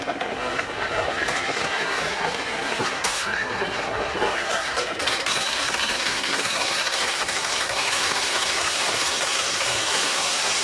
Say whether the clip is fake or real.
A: fake